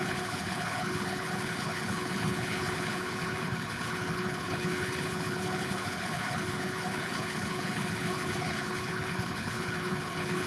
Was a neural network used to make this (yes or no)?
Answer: yes